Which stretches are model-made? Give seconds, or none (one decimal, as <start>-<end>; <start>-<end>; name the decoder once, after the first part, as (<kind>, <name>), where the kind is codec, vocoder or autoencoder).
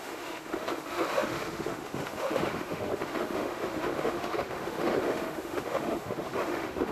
0.0-6.9 (autoencoder, DAC-VAE)